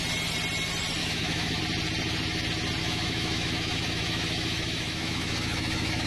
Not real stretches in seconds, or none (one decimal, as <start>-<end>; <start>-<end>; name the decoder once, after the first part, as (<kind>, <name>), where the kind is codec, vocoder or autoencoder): 1.0-1.6 (autoencoder, DAC-VAE); 2.8-6.1